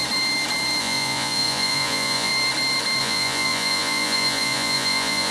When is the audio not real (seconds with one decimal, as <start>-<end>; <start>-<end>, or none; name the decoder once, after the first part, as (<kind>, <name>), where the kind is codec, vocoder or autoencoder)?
0.8-2.3 (vocoder, Vocos); 3.0-5.3